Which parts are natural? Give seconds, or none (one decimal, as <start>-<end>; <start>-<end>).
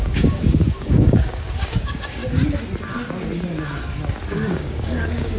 2.2-4.3